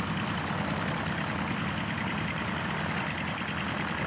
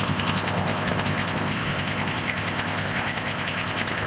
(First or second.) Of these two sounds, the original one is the first